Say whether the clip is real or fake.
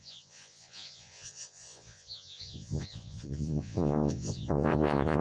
fake